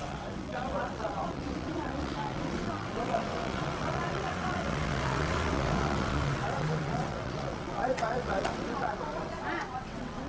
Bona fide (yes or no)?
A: no